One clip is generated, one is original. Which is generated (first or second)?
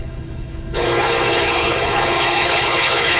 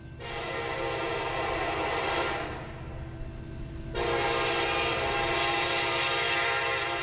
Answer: first